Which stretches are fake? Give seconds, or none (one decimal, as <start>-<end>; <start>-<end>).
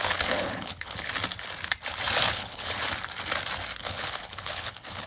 0.0-1.1; 2.3-2.8; 3.8-5.1